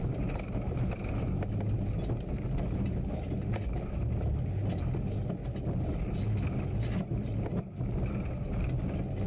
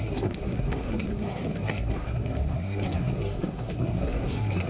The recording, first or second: first